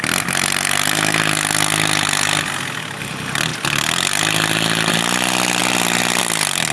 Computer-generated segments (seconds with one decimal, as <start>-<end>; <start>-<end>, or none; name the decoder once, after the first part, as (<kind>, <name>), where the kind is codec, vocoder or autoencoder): none